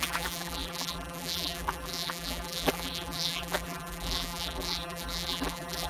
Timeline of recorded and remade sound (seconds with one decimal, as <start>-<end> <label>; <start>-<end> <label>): 0.0-5.9 remade